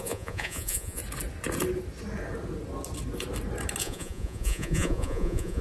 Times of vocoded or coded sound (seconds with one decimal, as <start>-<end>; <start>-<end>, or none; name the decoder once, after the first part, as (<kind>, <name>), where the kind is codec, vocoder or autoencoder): 0.0-1.0 (vocoder, Vocos); 3.8-5.6